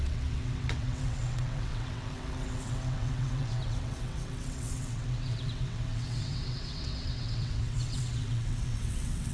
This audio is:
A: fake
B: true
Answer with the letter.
A